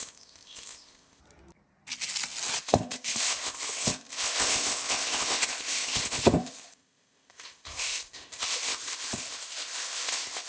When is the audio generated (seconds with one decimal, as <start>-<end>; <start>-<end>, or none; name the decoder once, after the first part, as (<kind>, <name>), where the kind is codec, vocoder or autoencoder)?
0.0-1.2 (codec, ZipCodec); 2.6-10.5